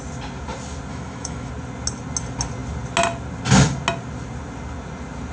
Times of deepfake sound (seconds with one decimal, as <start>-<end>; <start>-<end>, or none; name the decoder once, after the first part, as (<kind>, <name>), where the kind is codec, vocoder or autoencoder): 0.9-1.5 (autoencoder, DAC-VAE)